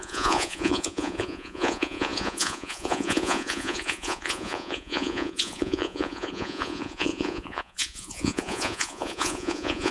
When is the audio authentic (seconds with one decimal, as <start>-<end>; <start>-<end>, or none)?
none